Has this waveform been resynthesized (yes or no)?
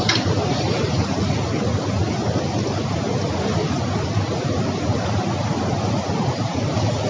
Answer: no